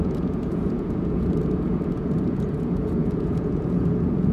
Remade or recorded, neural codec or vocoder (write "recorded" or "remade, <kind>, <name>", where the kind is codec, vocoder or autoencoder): remade, vocoder, Vocos